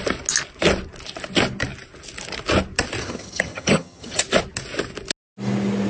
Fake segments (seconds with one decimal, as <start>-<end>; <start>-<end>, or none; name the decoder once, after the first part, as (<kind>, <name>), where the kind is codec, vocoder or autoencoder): 3.0-4.2 (vocoder, HiFi-GAN)